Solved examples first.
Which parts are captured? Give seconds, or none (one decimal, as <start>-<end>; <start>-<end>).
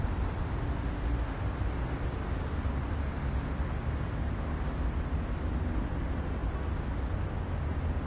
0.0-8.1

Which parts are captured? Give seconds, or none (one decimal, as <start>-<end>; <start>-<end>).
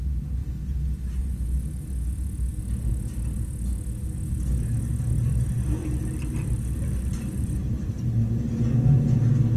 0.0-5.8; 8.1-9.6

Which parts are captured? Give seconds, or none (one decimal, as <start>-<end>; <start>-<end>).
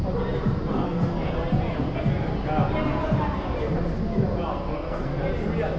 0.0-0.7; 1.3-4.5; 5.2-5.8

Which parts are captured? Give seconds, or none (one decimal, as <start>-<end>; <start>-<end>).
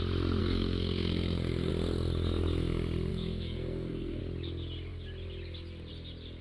0.0-0.4; 1.7-3.1; 4.2-6.4